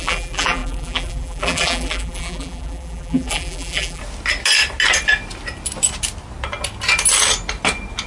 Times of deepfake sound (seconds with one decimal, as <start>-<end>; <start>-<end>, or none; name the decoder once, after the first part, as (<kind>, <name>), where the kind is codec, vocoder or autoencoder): 0.0-4.0 (vocoder, BigVGAN v2)